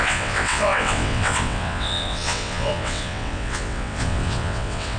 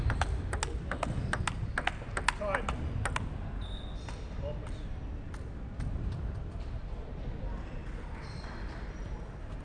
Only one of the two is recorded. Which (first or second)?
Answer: second